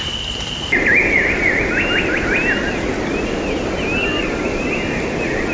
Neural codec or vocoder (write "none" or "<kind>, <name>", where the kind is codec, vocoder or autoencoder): none